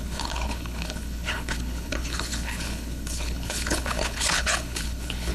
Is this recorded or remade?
remade